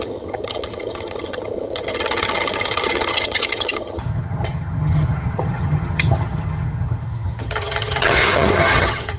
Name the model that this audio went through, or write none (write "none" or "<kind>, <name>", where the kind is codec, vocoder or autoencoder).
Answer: vocoder, HiFi-GAN